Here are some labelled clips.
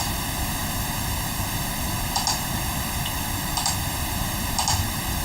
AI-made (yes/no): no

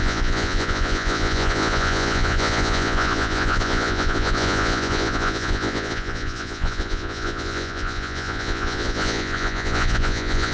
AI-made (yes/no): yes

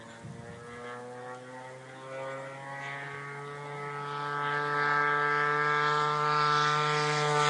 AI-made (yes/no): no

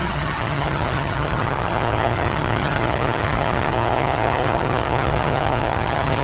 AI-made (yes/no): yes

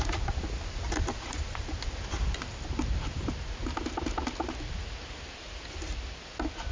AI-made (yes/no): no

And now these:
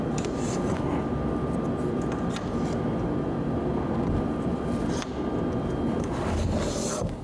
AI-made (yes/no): no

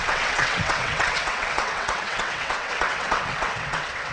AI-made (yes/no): yes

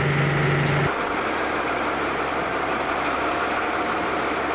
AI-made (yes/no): no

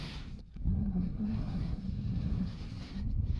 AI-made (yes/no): yes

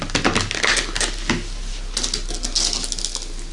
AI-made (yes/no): no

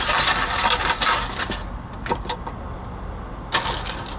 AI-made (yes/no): no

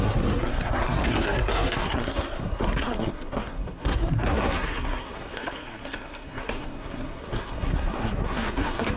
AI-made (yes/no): yes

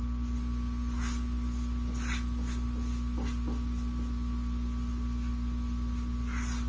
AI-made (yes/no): no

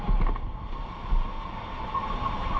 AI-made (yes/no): no